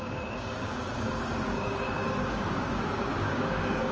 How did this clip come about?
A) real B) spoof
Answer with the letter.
B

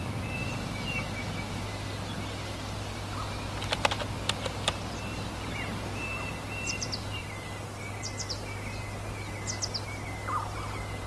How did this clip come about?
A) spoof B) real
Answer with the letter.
A